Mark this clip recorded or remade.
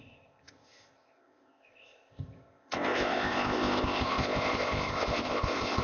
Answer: remade